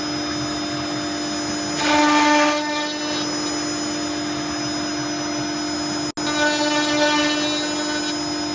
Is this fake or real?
real